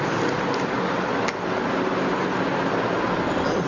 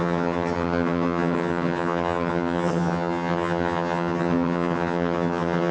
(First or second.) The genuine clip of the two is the first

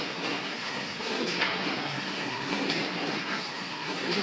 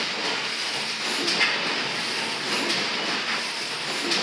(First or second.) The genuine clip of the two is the second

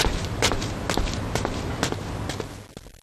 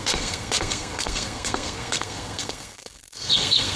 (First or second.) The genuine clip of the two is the first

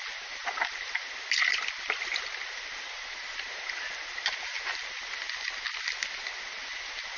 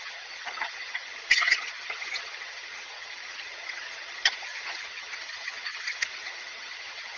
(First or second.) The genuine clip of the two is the first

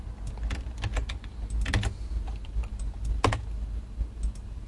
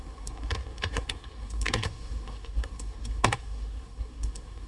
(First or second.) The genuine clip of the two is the first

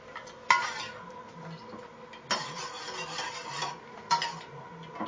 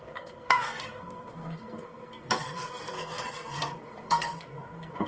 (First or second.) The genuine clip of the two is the first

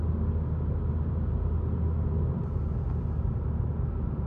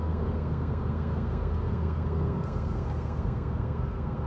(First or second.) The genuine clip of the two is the first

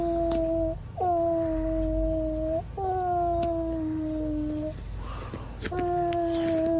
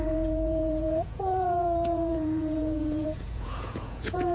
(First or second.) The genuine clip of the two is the first